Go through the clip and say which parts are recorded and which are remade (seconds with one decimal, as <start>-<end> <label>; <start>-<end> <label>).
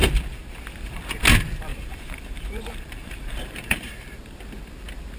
0.0-1.7 recorded; 1.7-3.9 remade; 3.9-5.2 recorded